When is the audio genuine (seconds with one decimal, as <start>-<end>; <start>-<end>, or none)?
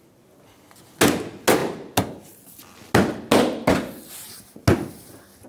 0.0-5.5